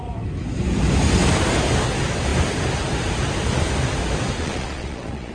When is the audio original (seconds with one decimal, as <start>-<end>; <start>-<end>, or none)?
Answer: 0.0-4.4